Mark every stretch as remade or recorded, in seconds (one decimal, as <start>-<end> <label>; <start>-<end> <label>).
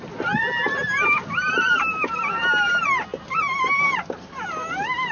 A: 0.0-3.1 recorded; 3.1-3.7 remade; 3.7-5.1 recorded